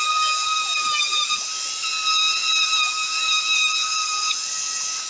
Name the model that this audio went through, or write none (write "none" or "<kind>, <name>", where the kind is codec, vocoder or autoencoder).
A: none